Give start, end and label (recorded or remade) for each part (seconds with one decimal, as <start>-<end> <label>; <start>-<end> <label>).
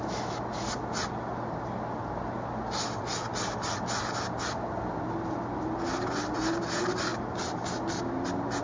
0.0-8.6 recorded